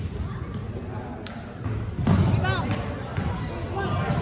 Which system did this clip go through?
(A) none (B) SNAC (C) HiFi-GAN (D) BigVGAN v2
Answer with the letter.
A